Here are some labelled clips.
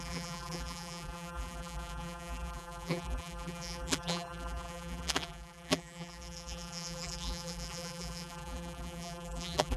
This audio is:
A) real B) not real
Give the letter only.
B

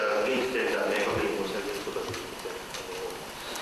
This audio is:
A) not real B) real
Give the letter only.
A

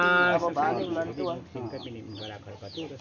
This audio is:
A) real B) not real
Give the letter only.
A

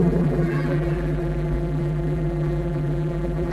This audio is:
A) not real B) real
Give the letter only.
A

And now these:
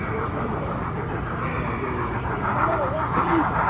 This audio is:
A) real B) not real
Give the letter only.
B